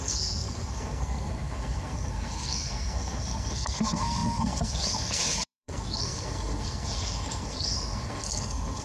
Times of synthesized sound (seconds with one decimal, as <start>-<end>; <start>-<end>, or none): 0.0-8.8